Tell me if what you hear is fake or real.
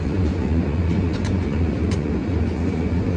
fake